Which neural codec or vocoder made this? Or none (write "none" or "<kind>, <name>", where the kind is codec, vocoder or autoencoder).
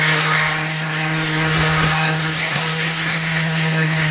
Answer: codec, SNAC